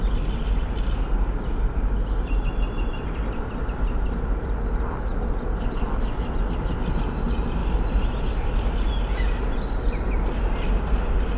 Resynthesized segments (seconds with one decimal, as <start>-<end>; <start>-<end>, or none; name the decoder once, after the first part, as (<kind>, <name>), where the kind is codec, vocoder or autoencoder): none